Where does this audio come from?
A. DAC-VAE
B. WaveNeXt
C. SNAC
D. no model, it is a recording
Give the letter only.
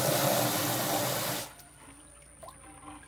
D